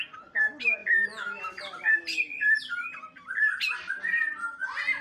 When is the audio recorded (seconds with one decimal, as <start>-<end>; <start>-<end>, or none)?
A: 0.0-5.0